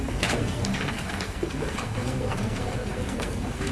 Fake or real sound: fake